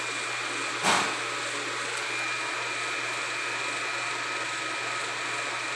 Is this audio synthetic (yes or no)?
no